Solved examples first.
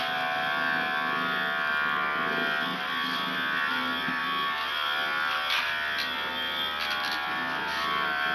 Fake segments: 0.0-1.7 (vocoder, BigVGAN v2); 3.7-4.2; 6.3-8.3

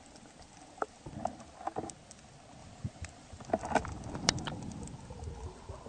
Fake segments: 2.6-3.5 (vocoder, BigVGAN v2)

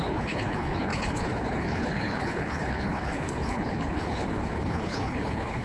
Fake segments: 0.0-5.6 (codec, HILCodec)

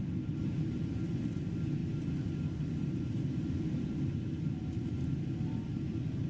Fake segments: none

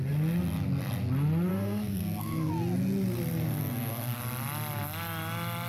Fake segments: 1.5-2.5 (codec, SNAC); 3.6-4.2

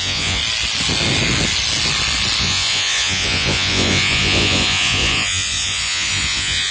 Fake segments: 0.0-0.4 (vocoder, Vocos); 2.4-6.7